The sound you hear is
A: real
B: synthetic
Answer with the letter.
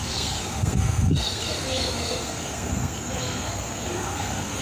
B